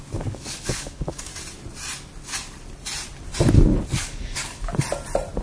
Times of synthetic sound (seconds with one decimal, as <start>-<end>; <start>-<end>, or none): 0.0-1.3; 3.9-4.6